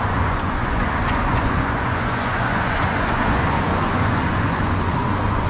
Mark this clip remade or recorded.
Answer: remade